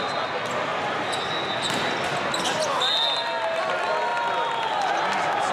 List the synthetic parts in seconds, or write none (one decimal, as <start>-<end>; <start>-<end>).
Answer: none